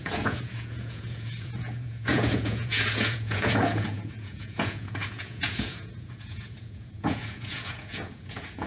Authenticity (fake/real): fake